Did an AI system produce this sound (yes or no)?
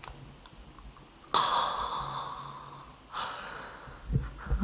no